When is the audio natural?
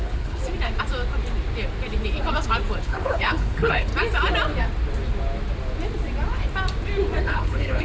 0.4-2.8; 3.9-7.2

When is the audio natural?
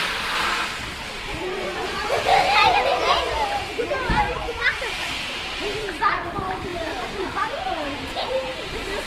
1.8-5.5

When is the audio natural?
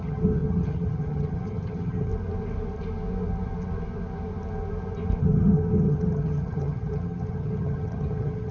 2.1-5.2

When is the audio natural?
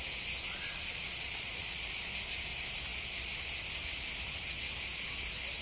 0.0-0.5; 2.1-5.6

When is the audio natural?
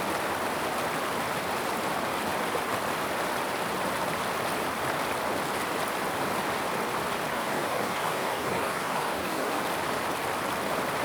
0.0-7.3; 9.6-11.0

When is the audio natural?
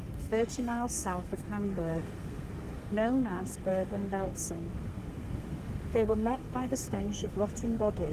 none